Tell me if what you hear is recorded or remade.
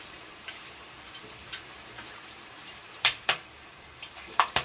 remade